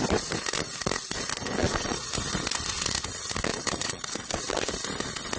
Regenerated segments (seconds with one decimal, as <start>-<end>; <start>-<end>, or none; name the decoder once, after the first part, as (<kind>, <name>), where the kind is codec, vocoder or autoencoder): 1.6-2.1 (vocoder, Vocos); 3.5-4.4